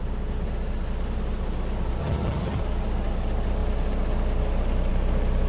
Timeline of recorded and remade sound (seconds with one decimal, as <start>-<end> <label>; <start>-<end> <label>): 0.0-2.0 recorded; 2.0-2.6 remade; 2.6-5.5 recorded